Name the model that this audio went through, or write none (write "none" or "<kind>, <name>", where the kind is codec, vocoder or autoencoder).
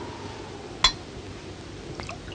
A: none